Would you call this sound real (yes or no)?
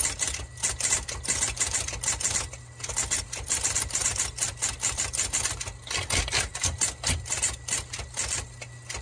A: yes